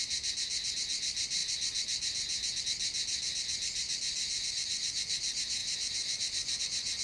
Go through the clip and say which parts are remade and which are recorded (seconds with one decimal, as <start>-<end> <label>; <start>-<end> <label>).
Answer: 0.0-5.6 recorded; 5.6-6.6 remade; 6.6-7.0 recorded